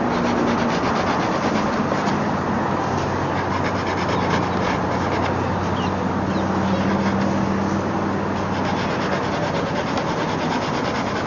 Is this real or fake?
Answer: real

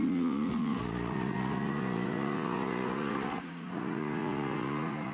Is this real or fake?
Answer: fake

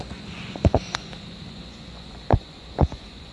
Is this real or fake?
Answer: fake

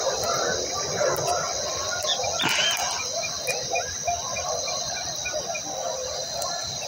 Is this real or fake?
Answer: real